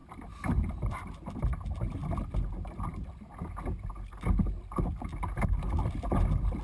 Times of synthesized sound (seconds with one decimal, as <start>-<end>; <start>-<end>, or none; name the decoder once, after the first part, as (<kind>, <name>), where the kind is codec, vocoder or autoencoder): none